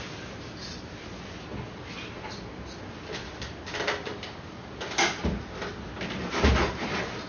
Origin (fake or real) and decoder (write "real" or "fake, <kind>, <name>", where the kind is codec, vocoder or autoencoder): real